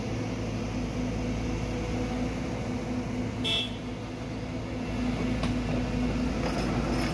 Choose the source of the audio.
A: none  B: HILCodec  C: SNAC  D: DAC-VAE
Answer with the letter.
A